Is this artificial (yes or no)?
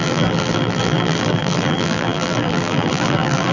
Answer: yes